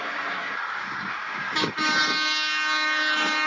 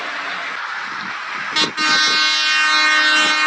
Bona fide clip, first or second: second